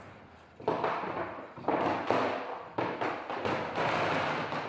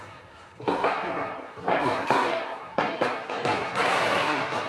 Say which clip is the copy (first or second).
second